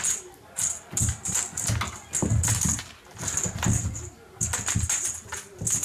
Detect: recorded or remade recorded